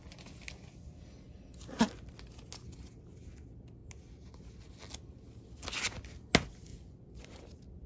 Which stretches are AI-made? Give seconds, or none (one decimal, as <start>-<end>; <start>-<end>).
6.7-7.4